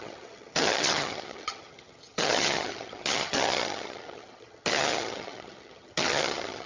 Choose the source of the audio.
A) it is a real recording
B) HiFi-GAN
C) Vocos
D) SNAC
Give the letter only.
B